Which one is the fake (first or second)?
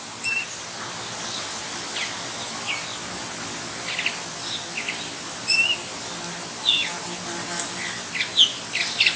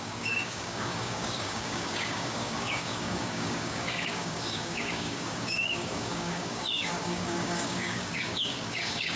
second